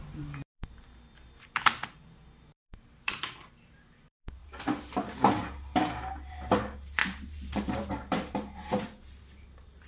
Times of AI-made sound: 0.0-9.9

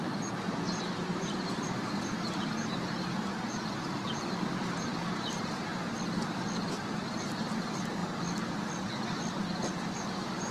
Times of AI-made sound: 0.0-5.7; 7.3-8.0; 9.8-10.5

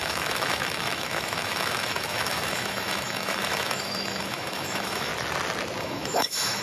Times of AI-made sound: 0.0-5.1; 5.8-6.6

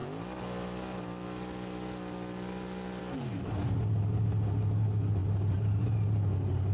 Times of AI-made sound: 5.2-5.8